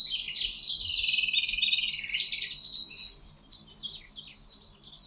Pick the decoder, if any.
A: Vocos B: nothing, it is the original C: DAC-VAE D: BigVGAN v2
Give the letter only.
B